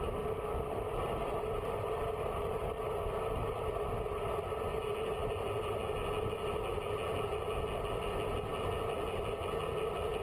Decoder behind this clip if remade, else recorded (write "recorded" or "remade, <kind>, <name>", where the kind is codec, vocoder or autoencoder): recorded